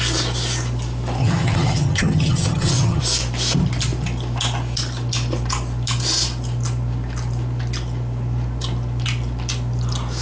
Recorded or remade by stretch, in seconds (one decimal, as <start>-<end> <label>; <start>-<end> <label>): 0.0-1.2 recorded; 1.2-3.0 remade; 3.0-10.2 recorded

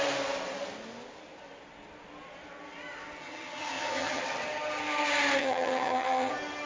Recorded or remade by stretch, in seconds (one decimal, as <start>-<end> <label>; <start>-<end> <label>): 0.0-3.2 recorded; 3.2-4.2 remade; 4.2-5.4 recorded; 5.4-6.3 remade; 6.3-6.7 recorded

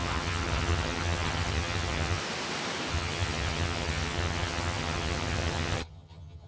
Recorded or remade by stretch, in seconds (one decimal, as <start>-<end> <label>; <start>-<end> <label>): 0.0-2.2 remade; 2.2-2.9 recorded; 2.9-6.5 remade

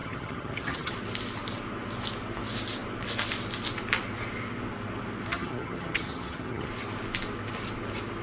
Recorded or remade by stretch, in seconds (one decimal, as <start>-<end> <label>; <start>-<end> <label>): 0.0-0.9 remade; 0.9-5.3 recorded; 5.3-6.7 remade; 6.7-8.2 recorded

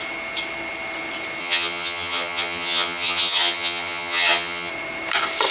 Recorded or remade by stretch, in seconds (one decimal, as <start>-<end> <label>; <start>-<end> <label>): 0.0-1.4 recorded; 1.4-4.7 remade; 4.7-5.5 recorded

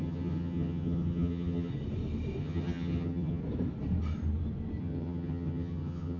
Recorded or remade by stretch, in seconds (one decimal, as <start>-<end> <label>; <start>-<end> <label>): 0.0-1.7 remade; 1.7-2.4 recorded; 2.4-3.4 remade; 3.4-4.8 recorded; 4.8-6.2 remade